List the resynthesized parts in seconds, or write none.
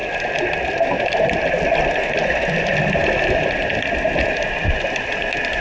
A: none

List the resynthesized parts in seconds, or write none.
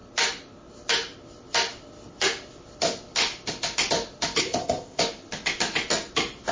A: 4.4-5.0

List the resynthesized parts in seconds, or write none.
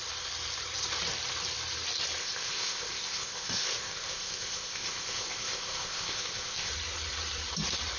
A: 2.2-6.7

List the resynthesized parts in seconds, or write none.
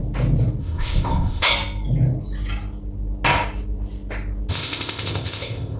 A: 0.6-1.5; 4.5-5.8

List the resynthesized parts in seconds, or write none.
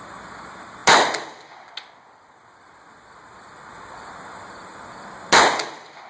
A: none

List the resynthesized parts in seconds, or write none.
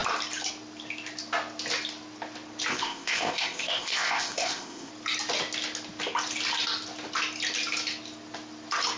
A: 2.7-4.9